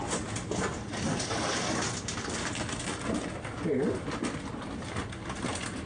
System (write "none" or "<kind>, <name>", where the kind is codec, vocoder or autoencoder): none